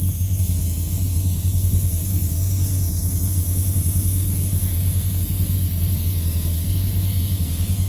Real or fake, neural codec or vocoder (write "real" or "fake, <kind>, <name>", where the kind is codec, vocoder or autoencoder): fake, codec, SNAC